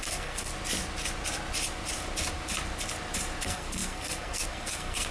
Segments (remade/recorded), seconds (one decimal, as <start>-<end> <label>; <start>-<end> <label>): 0.0-0.5 remade; 0.5-3.4 recorded; 3.4-5.1 remade